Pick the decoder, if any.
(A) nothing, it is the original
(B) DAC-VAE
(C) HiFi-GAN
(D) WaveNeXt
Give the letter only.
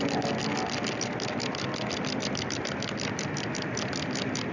A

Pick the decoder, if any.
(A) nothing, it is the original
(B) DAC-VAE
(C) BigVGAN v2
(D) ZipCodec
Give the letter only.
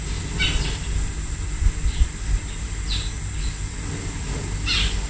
A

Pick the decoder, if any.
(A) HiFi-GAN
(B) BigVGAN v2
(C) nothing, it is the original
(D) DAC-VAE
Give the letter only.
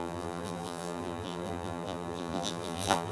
B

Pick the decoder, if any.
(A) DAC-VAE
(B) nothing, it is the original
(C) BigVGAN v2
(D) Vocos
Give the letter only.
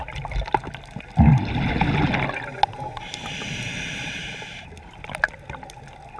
B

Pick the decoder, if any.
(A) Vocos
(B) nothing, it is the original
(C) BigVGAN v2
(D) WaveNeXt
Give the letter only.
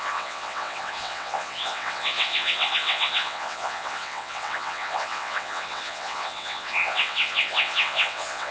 D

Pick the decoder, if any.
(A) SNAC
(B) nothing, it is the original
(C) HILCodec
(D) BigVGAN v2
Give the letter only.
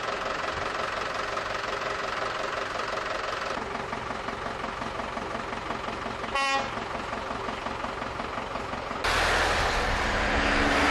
B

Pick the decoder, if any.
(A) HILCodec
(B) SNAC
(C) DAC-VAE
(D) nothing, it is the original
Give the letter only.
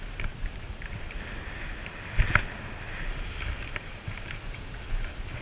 D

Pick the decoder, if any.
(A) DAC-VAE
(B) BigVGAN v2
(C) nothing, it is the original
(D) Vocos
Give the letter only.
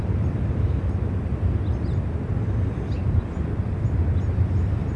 C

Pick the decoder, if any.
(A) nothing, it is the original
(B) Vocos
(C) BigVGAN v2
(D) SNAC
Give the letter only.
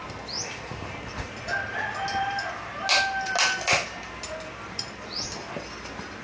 A